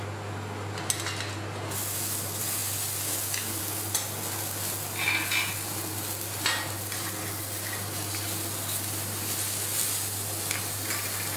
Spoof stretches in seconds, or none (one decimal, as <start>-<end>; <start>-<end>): none